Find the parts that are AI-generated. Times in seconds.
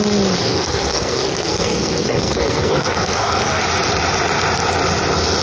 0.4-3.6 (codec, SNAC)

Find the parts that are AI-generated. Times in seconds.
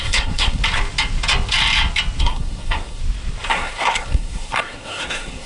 0.0-0.6 (codec, SNAC); 2.2-3.0; 3.5-5.5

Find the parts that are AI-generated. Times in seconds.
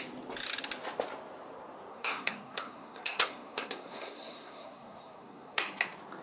1.9-5.6 (codec, SNAC)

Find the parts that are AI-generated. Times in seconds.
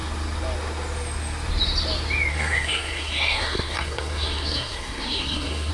2.3-5.7 (codec, SNAC)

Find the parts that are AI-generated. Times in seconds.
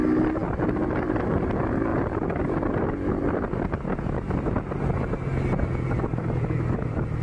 none